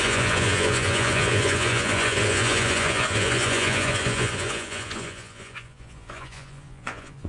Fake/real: fake